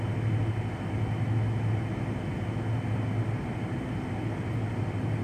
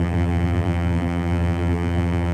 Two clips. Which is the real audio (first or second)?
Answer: first